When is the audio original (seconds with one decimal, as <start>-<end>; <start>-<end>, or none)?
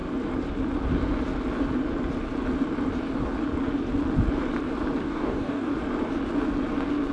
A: 0.0-5.0; 5.7-7.1